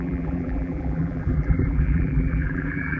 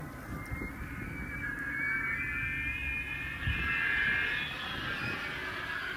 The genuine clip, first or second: second